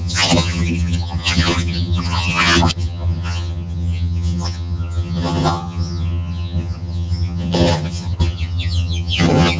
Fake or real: fake